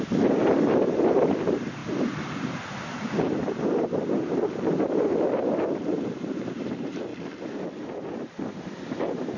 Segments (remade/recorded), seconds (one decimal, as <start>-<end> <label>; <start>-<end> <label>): 0.0-0.4 remade; 0.4-1.1 recorded; 1.1-1.8 remade; 1.8-6.0 recorded; 6.0-7.1 remade; 7.1-8.0 recorded; 8.0-9.4 remade